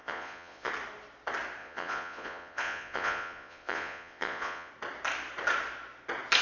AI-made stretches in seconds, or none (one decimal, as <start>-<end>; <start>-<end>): 0.0-0.7; 1.6-4.7